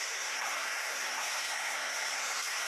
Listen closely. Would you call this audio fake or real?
fake